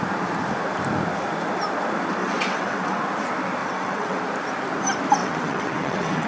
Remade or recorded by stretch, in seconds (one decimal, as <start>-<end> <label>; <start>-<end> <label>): 0.0-2.2 recorded; 2.2-3.0 remade; 3.0-3.6 recorded; 3.6-4.2 remade; 4.2-5.2 recorded; 5.2-6.3 remade